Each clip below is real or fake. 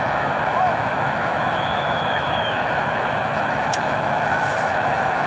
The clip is fake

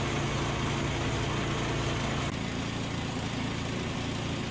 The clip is real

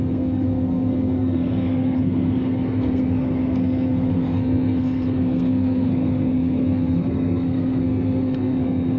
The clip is fake